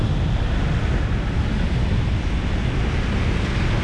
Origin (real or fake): real